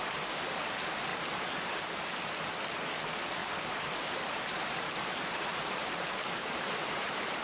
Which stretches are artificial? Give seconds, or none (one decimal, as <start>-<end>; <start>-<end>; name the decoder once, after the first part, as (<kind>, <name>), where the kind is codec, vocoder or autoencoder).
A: 1.1-1.8 (vocoder, BigVGAN v2); 3.4-7.4